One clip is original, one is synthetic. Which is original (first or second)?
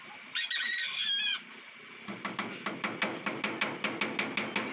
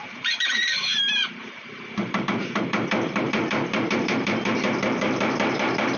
first